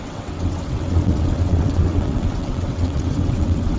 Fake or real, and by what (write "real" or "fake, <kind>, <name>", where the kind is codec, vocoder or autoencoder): fake, vocoder, WaveNeXt